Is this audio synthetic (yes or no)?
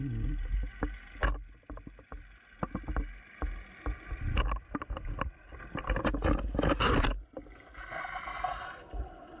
no